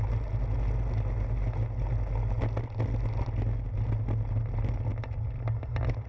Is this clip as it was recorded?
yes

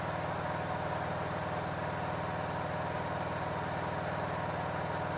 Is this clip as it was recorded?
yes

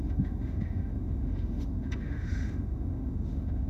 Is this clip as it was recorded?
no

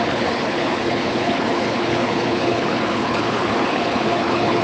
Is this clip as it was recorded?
no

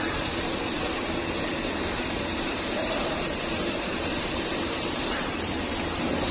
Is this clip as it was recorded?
no